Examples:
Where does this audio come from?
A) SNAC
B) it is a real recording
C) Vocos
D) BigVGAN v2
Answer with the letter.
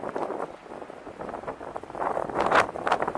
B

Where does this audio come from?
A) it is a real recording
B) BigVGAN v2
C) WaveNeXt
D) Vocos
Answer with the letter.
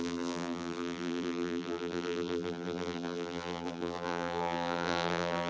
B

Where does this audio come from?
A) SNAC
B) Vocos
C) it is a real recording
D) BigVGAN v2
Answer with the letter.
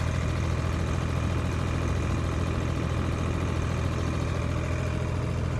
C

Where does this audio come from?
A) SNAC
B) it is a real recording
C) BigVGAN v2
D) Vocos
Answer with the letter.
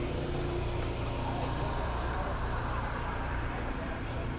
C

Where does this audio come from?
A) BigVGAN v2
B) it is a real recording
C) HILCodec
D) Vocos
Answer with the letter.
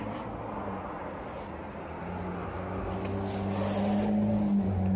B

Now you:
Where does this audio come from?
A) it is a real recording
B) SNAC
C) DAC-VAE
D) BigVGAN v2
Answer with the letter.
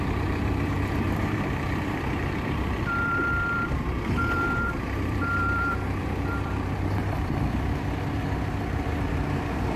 D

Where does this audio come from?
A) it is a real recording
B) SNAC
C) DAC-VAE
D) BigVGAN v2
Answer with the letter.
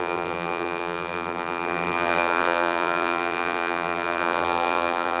D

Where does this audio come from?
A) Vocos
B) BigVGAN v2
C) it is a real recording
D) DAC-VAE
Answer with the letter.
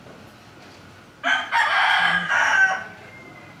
C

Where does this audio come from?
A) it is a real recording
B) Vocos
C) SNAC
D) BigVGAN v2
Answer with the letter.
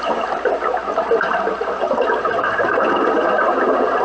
D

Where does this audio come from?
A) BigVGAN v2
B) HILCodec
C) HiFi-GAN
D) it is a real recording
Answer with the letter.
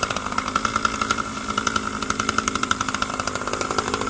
A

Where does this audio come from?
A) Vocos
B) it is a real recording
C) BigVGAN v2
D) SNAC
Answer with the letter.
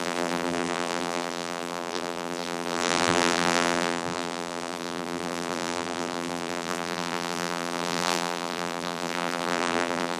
C